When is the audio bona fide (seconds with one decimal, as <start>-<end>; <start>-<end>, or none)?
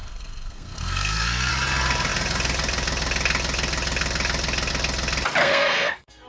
1.5-5.4